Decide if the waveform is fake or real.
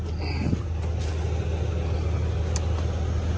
real